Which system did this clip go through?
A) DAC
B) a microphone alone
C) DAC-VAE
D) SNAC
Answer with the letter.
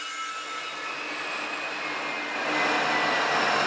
B